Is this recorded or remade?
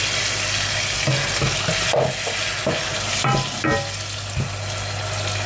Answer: recorded